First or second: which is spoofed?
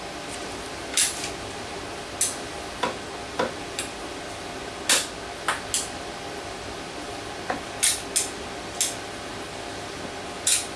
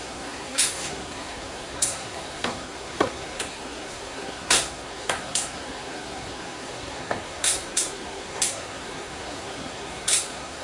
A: second